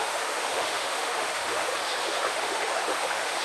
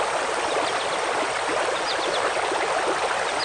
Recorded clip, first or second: second